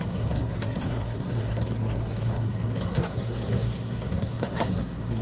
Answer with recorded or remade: remade